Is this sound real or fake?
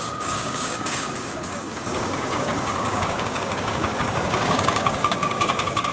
fake